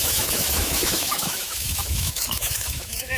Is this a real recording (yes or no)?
no